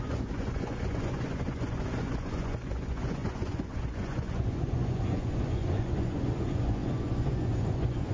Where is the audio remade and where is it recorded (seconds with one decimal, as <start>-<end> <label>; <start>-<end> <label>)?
0.0-8.1 remade